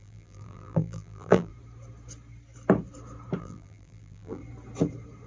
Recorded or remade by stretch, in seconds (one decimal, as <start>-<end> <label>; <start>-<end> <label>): 0.0-1.5 remade; 1.5-3.4 recorded; 3.4-4.4 remade; 4.4-5.3 recorded